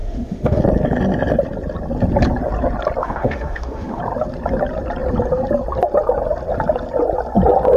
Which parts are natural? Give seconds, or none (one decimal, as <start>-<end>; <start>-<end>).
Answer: 0.6-3.0; 4.0-7.8